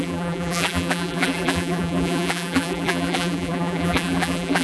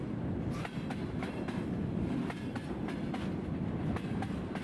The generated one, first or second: first